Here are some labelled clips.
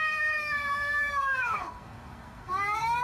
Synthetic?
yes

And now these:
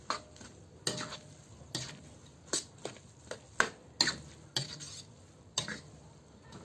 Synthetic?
no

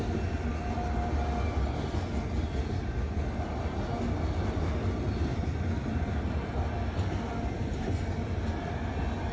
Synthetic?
no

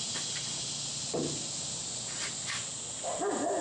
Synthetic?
no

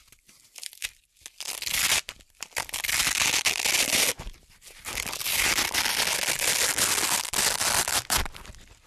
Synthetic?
no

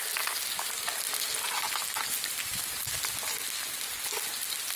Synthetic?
no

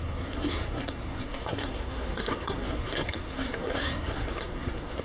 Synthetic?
yes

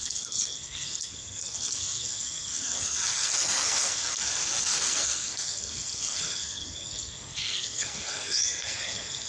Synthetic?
yes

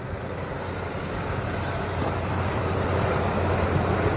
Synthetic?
no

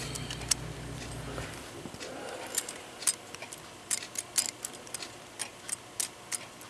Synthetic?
no